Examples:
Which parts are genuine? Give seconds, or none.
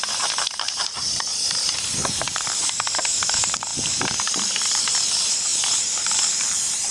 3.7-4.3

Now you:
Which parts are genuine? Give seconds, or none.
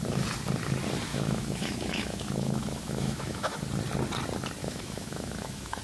0.0-1.1; 3.5-4.6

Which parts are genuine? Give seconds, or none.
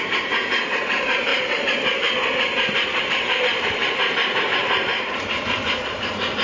1.3-3.4; 3.8-4.3